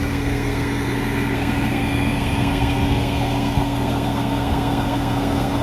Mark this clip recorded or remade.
remade